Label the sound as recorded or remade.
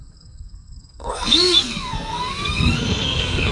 remade